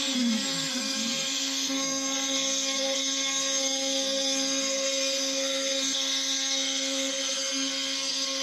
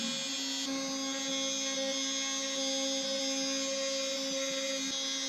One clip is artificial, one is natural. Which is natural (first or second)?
second